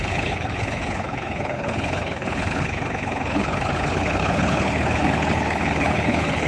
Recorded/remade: remade